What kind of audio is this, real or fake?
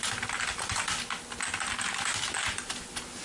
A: real